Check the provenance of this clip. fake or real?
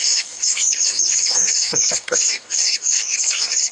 fake